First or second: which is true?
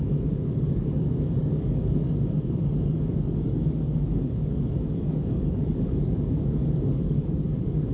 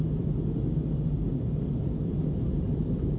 second